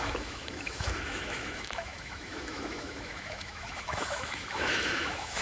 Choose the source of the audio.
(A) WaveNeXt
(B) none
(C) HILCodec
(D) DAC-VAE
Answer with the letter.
D